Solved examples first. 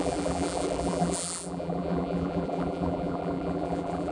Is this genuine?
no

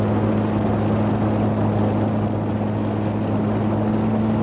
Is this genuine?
yes